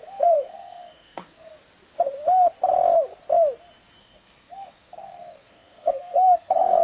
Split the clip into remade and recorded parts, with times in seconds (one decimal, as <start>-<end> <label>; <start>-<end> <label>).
0.0-1.5 remade; 1.5-4.0 recorded; 4.0-6.8 remade